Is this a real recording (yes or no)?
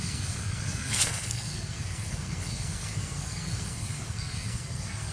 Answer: no